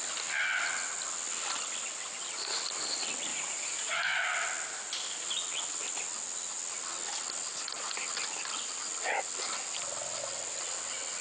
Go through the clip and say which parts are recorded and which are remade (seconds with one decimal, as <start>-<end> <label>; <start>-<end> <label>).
0.0-3.3 recorded; 3.3-4.1 remade; 4.1-11.2 recorded